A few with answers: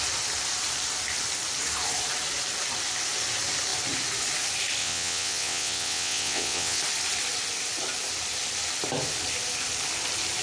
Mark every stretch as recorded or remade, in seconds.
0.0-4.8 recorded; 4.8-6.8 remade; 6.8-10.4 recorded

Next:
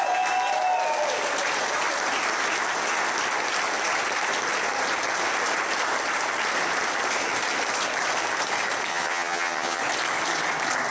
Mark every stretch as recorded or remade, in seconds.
0.0-8.9 recorded; 8.9-9.8 remade; 9.8-10.9 recorded

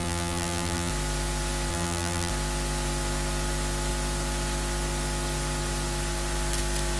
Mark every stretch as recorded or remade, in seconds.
0.0-0.9 remade; 0.9-1.7 recorded; 1.7-2.3 remade; 2.3-7.0 recorded

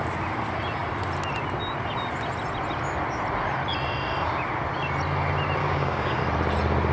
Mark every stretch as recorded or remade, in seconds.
0.0-5.6 recorded; 5.6-6.2 remade; 6.2-6.9 recorded

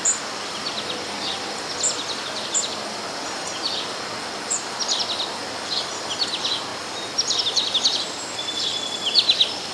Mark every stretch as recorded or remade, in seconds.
0.0-6.7 remade; 6.7-7.4 recorded; 7.4-9.7 remade

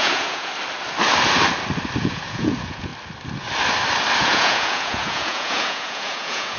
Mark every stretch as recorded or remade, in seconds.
0.0-0.5 remade; 0.5-2.0 recorded; 2.0-2.9 remade; 2.9-4.2 recorded; 4.2-6.6 remade

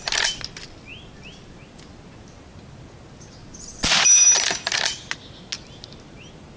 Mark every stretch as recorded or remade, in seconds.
0.0-6.6 recorded

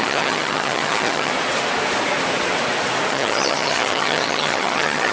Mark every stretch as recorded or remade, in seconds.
0.0-1.3 remade; 1.3-3.1 recorded; 3.1-5.1 remade